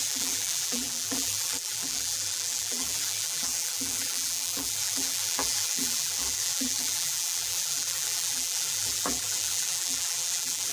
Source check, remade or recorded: remade